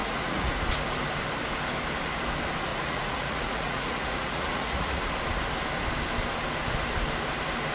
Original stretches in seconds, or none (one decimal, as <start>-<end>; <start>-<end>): 0.5-2.7; 5.1-7.7